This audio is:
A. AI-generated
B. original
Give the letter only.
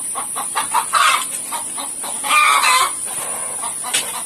B